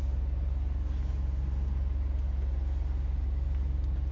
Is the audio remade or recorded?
recorded